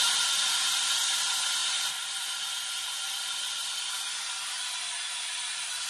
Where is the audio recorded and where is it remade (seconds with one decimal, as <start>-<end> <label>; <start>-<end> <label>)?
0.0-5.9 recorded